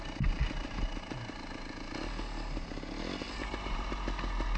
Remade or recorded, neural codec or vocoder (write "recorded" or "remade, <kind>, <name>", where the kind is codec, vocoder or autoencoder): recorded